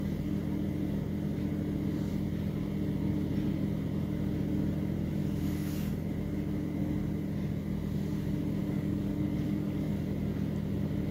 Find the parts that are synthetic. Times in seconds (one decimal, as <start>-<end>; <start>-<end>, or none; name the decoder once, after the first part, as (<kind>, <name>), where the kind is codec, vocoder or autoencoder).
5.2-5.9 (codec, DAC); 8.6-9.9